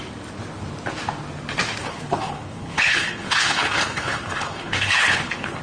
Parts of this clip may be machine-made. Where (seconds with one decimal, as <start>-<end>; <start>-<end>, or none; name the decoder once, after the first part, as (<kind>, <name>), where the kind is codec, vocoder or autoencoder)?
1.8-5.6 (codec, HILCodec)